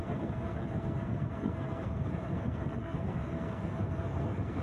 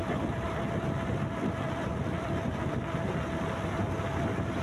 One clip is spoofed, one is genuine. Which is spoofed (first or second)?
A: first